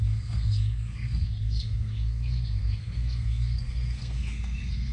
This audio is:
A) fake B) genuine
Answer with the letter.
A